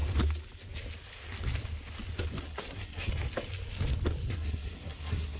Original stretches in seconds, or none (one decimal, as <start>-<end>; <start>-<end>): 0.0-2.4; 3.1-4.3